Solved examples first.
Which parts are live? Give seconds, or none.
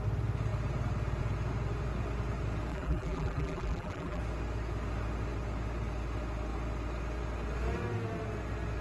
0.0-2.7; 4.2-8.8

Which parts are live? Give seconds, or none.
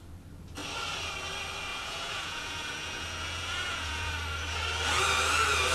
0.0-1.7; 4.1-5.7